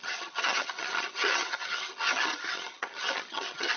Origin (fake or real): fake